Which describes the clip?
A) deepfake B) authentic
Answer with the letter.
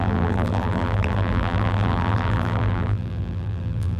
A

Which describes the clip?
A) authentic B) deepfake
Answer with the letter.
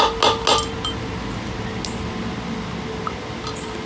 A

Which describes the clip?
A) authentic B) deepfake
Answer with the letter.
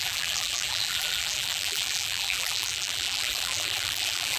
B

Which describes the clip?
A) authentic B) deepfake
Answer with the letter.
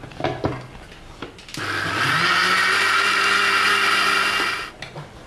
A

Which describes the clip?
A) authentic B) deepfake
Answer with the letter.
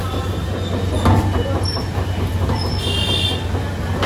A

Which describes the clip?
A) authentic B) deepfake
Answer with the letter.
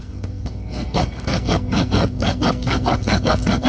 B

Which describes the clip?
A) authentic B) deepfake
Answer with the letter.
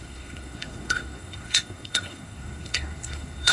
B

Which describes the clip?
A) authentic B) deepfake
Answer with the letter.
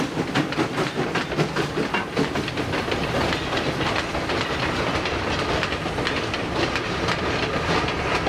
A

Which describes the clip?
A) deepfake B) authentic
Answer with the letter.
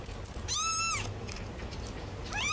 B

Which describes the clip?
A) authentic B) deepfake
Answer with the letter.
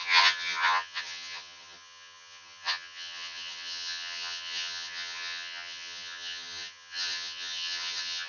B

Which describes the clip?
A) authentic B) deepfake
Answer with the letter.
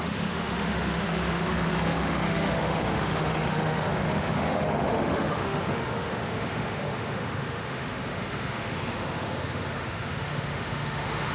B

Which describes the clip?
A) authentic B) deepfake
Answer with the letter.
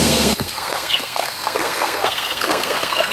B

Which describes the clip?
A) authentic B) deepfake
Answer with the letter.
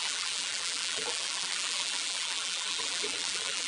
B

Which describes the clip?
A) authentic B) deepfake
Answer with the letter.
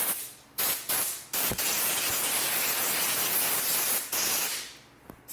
A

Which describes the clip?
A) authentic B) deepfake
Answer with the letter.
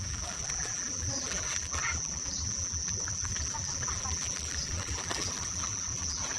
B